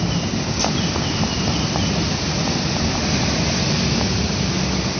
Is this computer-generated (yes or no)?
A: no